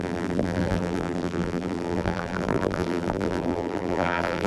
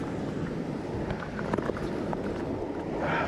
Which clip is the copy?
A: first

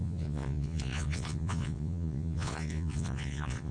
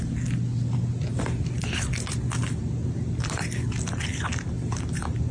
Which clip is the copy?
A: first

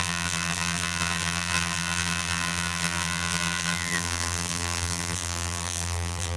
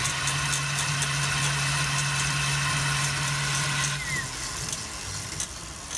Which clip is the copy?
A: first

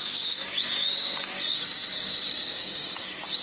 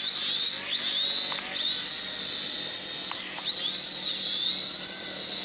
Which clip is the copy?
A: first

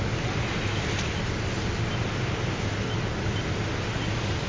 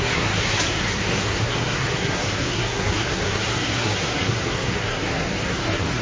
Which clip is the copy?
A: second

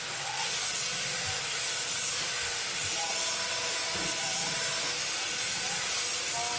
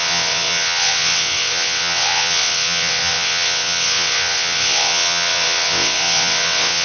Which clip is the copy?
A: second